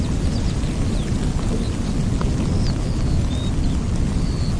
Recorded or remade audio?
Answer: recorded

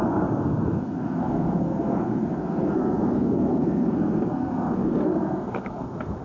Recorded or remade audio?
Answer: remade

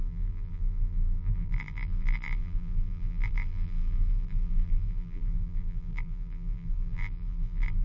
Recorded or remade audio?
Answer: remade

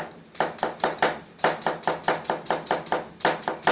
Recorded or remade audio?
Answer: recorded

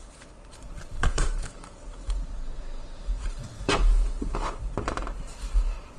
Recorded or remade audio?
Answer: remade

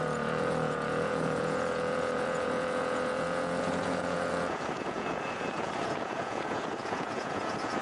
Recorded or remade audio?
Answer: remade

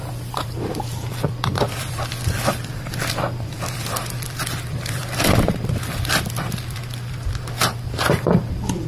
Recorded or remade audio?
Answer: remade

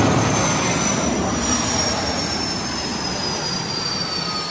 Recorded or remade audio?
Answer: recorded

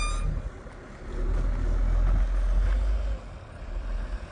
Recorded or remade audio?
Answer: recorded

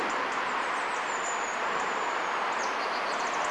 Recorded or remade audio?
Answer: recorded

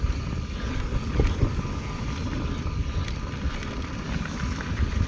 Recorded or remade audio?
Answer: recorded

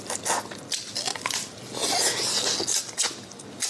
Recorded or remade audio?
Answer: recorded